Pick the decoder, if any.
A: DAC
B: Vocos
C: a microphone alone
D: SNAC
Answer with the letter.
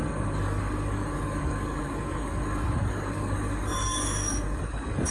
A